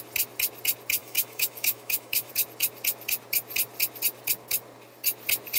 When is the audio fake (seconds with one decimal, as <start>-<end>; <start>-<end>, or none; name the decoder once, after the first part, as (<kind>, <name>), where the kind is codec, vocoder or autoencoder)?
1.0-2.3 (autoencoder, DAC-VAE)

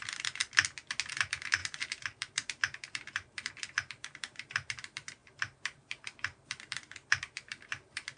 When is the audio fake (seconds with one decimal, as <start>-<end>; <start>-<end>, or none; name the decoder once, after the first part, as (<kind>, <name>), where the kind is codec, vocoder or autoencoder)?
0.0-0.4 (vocoder, BigVGAN v2); 1.1-8.2